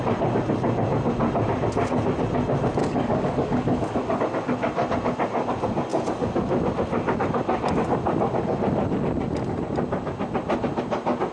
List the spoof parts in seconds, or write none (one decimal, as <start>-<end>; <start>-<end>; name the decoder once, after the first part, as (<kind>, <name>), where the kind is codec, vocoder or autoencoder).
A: 2.8-4.2 (codec, DAC)